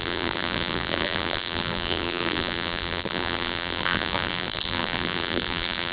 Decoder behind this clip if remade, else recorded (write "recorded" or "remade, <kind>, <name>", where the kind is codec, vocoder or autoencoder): remade, vocoder, BigVGAN v2